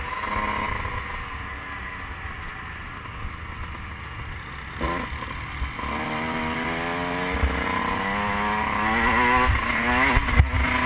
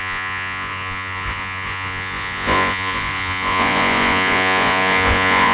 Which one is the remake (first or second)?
second